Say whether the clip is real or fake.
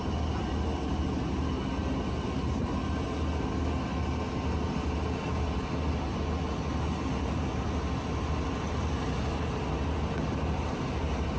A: real